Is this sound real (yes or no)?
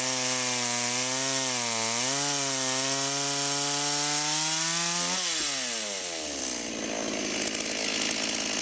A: yes